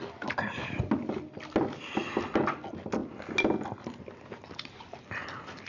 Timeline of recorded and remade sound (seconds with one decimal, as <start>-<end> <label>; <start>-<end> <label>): 0.0-5.7 recorded